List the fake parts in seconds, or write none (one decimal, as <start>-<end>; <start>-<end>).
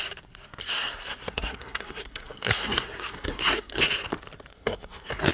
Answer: 0.6-3.8; 4.5-5.3